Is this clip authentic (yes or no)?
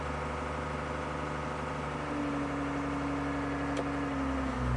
yes